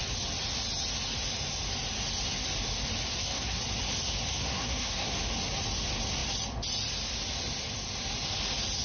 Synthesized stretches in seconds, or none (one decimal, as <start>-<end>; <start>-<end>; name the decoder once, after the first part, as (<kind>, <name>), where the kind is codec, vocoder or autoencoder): 3.1-3.6 (codec, SNAC); 4.3-5.1